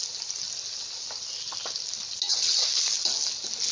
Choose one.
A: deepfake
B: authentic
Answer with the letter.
B